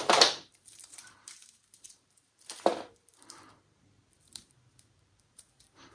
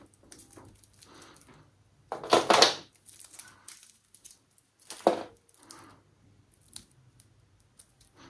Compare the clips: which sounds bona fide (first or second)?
second